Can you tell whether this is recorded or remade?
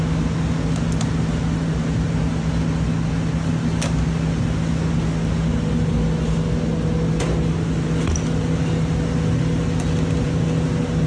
recorded